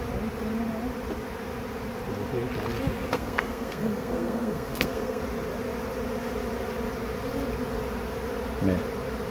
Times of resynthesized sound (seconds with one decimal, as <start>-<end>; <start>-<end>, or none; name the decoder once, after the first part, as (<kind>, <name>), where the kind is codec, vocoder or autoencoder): 3.1-5.2 (codec, SNAC)